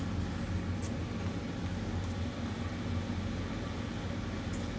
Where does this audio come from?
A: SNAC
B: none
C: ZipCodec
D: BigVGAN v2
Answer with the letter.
B